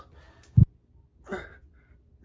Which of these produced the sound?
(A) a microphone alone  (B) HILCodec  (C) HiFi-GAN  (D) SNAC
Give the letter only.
A